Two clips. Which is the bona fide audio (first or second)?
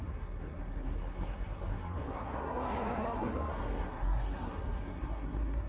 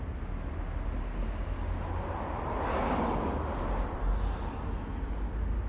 second